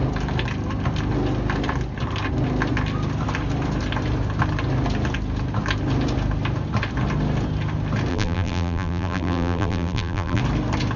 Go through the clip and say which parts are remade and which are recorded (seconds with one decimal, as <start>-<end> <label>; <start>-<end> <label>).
0.0-8.1 recorded; 8.1-10.4 remade; 10.4-11.0 recorded